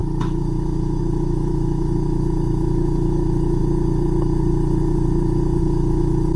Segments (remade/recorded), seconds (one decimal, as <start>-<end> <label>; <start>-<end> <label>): 0.0-3.6 remade; 3.6-5.6 recorded; 5.6-6.4 remade